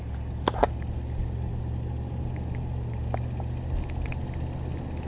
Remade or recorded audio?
recorded